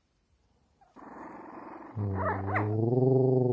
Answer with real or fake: fake